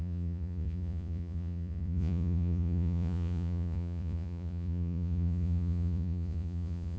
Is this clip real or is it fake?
fake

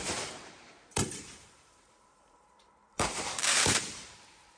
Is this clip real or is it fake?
fake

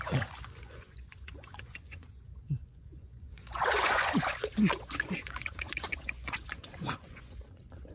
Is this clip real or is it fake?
fake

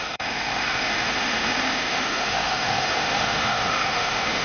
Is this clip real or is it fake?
fake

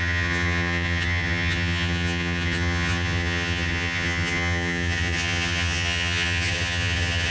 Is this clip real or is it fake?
fake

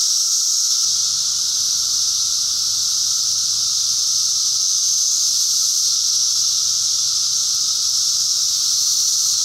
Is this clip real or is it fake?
real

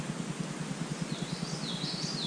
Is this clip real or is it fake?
real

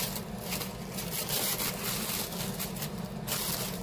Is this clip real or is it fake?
real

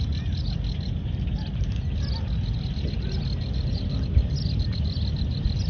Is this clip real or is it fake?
real